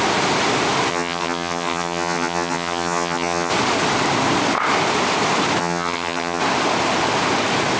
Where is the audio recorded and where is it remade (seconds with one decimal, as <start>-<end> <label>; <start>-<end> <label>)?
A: 0.0-0.9 recorded; 0.9-3.5 remade; 3.5-5.6 recorded; 5.6-6.4 remade; 6.4-7.8 recorded